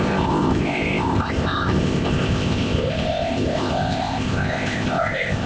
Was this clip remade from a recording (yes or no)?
yes